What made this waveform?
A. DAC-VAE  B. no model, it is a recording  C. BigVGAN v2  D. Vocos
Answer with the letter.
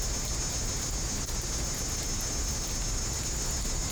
B